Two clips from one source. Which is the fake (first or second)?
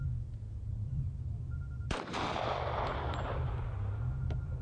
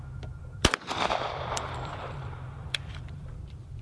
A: second